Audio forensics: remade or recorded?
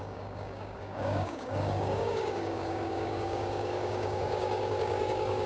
remade